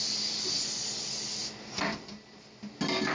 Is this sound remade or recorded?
recorded